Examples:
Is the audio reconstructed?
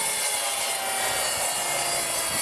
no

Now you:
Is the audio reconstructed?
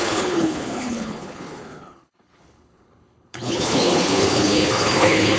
yes